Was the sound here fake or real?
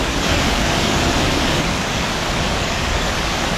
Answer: fake